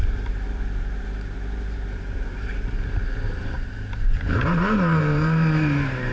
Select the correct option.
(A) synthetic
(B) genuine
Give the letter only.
A